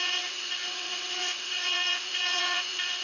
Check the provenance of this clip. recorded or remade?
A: remade